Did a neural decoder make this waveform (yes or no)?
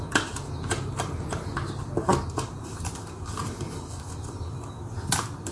no